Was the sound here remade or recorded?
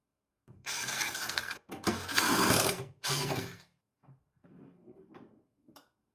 remade